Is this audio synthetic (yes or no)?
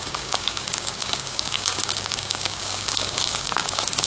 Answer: yes